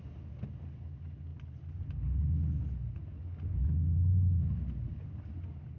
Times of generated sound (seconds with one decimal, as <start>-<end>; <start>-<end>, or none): none